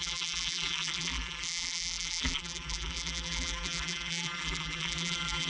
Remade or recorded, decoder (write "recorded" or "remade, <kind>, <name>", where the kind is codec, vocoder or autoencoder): remade, vocoder, BigVGAN v2